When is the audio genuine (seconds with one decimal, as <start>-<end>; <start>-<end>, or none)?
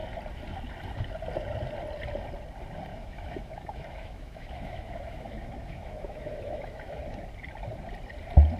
0.0-2.9; 7.0-8.6